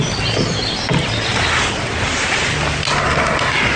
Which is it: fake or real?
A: real